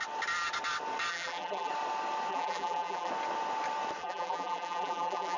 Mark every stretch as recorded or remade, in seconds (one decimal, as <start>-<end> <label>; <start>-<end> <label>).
0.0-1.1 recorded; 1.1-1.7 remade; 1.7-2.3 recorded; 2.3-3.1 remade; 3.1-4.0 recorded; 4.0-5.4 remade

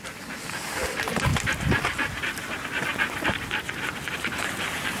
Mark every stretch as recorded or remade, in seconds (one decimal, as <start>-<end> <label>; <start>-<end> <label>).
0.0-1.3 recorded; 1.3-2.2 remade; 2.2-5.0 recorded

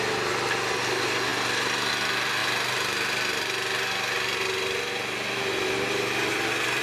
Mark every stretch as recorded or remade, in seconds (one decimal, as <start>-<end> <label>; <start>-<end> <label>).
0.0-6.8 recorded

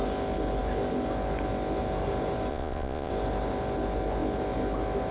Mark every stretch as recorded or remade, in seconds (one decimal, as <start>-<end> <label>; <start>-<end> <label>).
0.0-2.5 recorded; 2.5-3.1 remade; 3.1-5.1 recorded

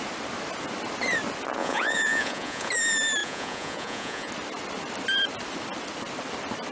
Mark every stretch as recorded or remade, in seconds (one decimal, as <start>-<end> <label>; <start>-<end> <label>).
0.0-1.6 recorded; 1.6-2.7 remade; 2.7-3.2 recorded; 3.2-4.3 remade; 4.3-6.7 recorded

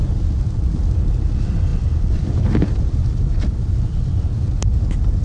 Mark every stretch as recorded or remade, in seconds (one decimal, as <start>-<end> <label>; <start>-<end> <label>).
0.0-1.7 recorded; 1.7-4.8 remade; 4.8-5.2 recorded